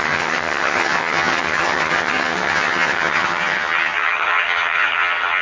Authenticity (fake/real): fake